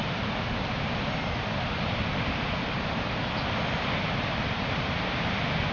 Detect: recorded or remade recorded